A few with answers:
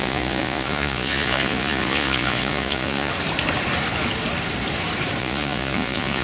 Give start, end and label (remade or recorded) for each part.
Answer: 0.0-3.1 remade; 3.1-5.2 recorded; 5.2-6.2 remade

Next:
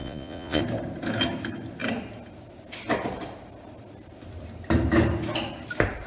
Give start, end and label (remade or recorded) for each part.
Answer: 0.0-0.6 remade; 0.6-6.1 recorded

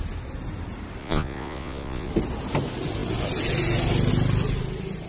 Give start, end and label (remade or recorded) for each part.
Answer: 0.0-1.0 recorded; 1.0-2.1 remade; 2.1-5.1 recorded

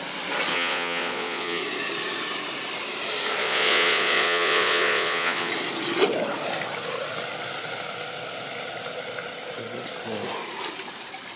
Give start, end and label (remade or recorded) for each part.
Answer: 0.0-0.5 recorded; 0.5-1.6 remade; 1.6-3.4 recorded; 3.4-5.5 remade; 5.5-11.4 recorded